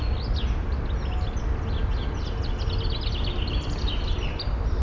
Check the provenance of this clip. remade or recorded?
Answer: recorded